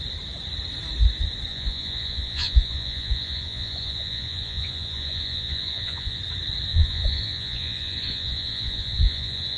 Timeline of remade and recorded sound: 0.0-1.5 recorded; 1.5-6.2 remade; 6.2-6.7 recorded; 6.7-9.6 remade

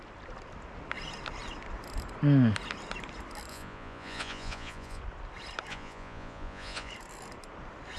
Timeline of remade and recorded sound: 0.0-3.5 recorded; 3.5-5.0 remade; 5.0-5.7 recorded; 5.7-6.9 remade; 6.9-8.0 recorded

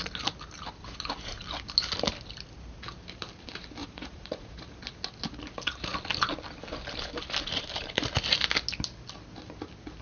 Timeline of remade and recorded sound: 0.0-3.8 recorded; 3.8-4.8 remade; 4.8-10.0 recorded

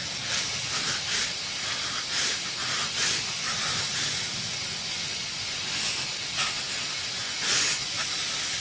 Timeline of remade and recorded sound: 0.0-2.6 recorded; 2.6-6.0 remade; 6.0-7.2 recorded; 7.2-8.2 remade; 8.2-8.6 recorded

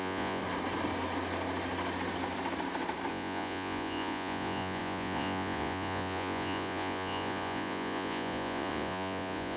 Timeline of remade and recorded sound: 0.0-0.4 remade; 0.4-3.1 recorded; 3.1-9.6 remade

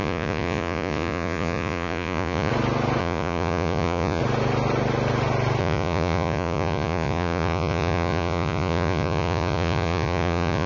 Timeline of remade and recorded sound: 0.0-2.5 remade; 2.5-3.0 recorded; 3.0-4.2 remade; 4.2-5.6 recorded; 5.6-10.7 remade

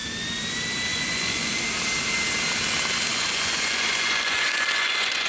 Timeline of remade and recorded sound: 0.0-0.9 recorded; 0.9-1.5 remade; 1.5-3.1 recorded; 3.1-5.3 remade